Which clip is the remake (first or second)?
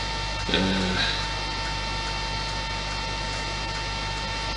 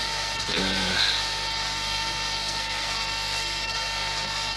second